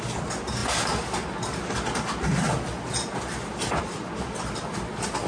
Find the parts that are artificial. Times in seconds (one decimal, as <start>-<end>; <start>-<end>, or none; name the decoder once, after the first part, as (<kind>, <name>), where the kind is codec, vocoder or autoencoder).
none